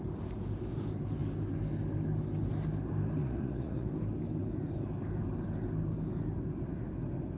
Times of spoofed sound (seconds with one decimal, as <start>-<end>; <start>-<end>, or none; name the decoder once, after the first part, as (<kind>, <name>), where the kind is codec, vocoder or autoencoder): 3.2-3.9 (vocoder, Vocos)